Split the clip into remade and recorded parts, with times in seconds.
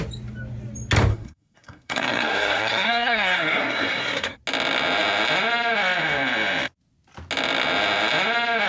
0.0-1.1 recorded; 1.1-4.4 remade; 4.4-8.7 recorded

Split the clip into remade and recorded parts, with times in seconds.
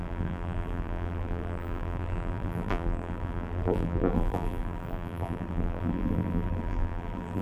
0.0-7.4 remade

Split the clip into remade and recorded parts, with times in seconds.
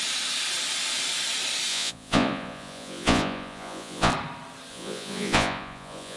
0.0-1.7 recorded; 1.7-4.1 remade; 4.1-4.7 recorded; 4.7-6.2 remade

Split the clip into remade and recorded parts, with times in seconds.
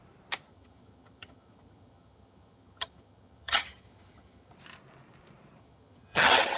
0.0-0.5 recorded; 0.5-4.5 remade; 4.5-5.6 recorded; 5.6-6.6 remade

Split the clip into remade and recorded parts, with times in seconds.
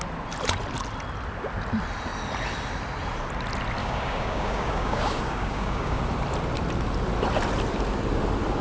0.0-3.8 recorded; 3.8-6.0 remade; 6.0-8.6 recorded